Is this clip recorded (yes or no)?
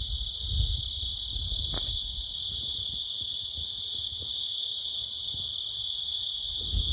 yes